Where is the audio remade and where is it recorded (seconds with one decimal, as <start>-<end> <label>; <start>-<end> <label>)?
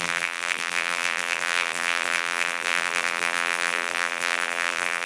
0.0-5.1 remade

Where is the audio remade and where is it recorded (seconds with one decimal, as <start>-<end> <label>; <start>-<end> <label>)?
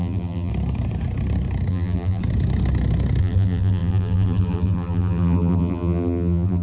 0.0-0.5 remade; 0.5-1.7 recorded; 1.7-2.2 remade; 2.2-3.2 recorded; 3.2-6.6 remade